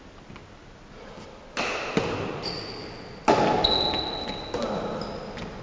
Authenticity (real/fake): real